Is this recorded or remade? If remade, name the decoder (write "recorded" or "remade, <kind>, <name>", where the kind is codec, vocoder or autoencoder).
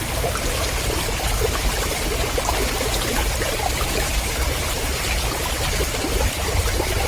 recorded